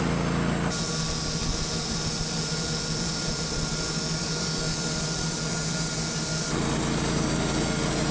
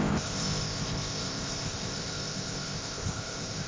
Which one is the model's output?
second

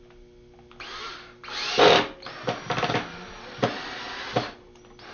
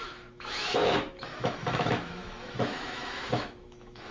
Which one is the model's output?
second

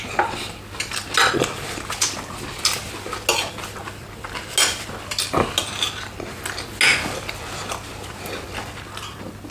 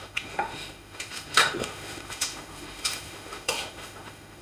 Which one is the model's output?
second